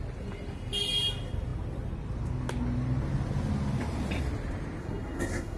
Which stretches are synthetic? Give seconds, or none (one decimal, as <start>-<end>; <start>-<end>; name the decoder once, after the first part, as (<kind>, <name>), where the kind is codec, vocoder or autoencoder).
4.8-5.6 (codec, SNAC)